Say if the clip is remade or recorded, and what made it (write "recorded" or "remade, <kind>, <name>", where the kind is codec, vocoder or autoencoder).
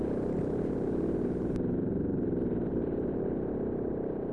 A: recorded